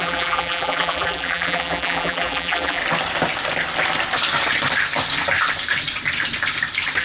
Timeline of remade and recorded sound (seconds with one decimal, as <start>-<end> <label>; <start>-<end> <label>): 0.0-2.8 remade; 2.8-7.0 recorded